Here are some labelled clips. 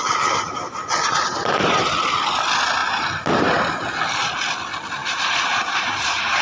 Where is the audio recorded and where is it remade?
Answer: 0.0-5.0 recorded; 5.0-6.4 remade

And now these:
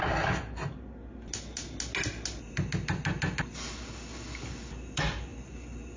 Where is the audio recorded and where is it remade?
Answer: 0.0-6.0 recorded

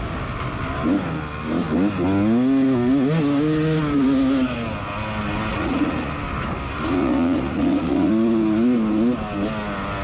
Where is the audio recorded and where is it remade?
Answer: 0.0-5.5 recorded; 5.5-6.1 remade; 6.1-7.0 recorded; 7.0-8.1 remade; 8.1-10.0 recorded

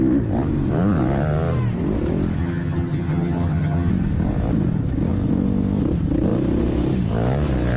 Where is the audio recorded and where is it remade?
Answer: 0.0-2.4 recorded; 2.4-3.9 remade; 3.9-7.8 recorded

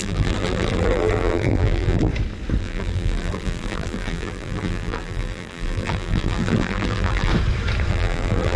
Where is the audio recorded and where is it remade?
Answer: 0.0-2.1 remade; 2.1-2.6 recorded; 2.6-7.3 remade; 7.3-7.9 recorded; 7.9-8.6 remade